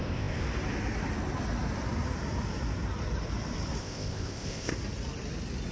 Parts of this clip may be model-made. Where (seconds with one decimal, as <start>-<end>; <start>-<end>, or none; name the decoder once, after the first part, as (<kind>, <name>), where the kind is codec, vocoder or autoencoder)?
0.0-0.4 (codec, ZipCodec); 3.8-4.7